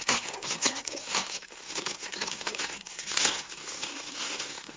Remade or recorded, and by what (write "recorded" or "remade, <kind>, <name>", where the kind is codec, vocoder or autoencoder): remade, codec, SNAC